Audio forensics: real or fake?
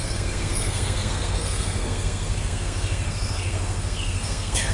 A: fake